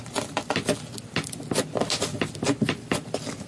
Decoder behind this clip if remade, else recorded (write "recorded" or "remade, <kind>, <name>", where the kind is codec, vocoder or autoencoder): recorded